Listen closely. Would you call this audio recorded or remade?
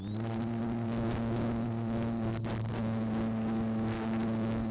recorded